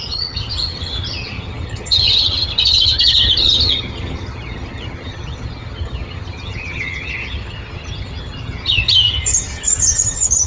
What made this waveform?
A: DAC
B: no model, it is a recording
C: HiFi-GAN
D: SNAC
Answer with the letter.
C